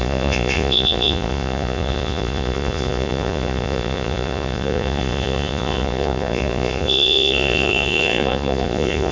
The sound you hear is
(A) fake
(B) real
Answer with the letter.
A